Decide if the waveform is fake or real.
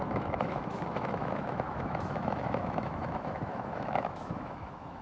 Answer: fake